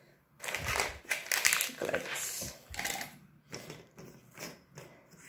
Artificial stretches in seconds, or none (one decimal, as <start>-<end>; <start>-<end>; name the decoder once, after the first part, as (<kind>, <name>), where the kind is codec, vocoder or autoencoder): none